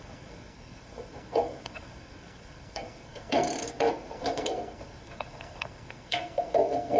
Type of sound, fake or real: fake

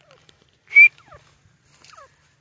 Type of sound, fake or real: real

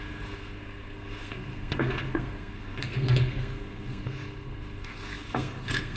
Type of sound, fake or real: fake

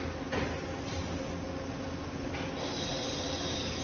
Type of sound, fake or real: real